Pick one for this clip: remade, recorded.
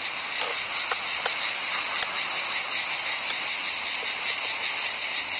recorded